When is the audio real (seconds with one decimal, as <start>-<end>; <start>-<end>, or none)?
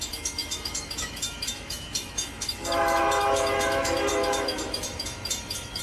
none